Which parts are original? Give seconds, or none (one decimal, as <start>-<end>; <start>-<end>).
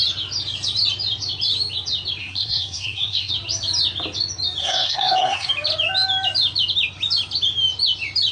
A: 0.0-2.2; 3.3-4.6; 5.5-8.3